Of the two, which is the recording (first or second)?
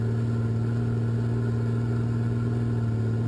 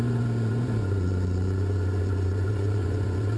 first